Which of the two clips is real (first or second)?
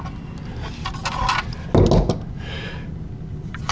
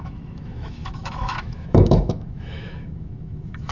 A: first